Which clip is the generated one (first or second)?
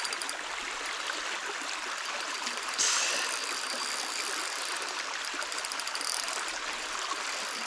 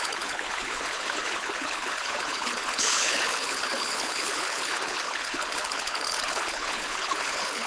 second